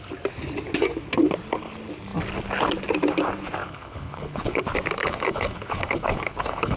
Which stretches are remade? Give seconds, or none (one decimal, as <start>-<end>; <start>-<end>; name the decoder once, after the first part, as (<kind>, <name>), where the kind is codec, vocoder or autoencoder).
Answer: 3.6-4.6 (codec, HILCodec); 5.0-6.8